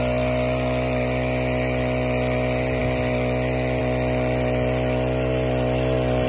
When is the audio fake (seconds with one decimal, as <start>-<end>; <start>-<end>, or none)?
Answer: none